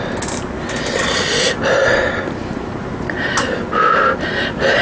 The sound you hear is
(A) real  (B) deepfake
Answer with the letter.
A